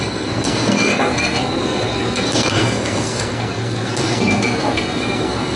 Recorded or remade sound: remade